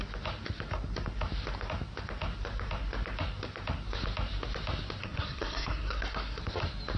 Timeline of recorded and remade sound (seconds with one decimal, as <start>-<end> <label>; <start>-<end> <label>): 0.0-5.0 recorded; 5.0-6.4 remade; 6.4-7.0 recorded